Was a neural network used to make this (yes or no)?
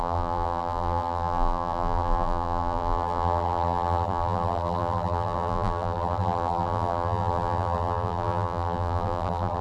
yes